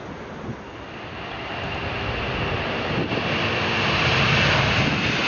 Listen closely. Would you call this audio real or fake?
real